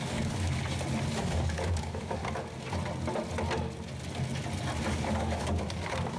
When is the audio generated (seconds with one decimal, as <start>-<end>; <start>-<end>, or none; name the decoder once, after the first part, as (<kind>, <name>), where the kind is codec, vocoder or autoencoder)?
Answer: 0.0-0.6 (codec, DAC); 1.2-2.2; 4.9-6.2